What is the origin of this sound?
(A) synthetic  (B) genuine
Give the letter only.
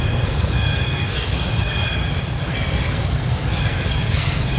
A